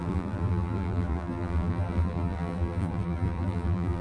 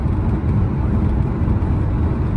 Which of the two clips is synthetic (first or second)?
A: first